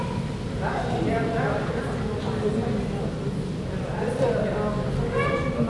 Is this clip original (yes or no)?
yes